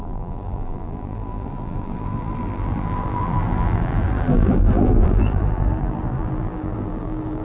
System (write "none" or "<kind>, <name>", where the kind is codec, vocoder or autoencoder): vocoder, BigVGAN v2